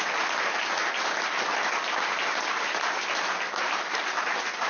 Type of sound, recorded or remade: recorded